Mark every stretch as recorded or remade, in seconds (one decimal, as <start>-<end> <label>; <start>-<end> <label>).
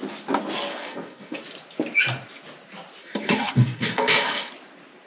0.0-0.7 recorded; 0.7-1.4 remade; 1.4-3.0 recorded; 3.0-4.5 remade; 4.5-5.1 recorded